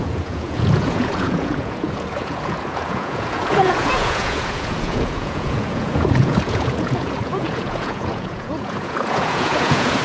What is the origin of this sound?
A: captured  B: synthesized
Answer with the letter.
B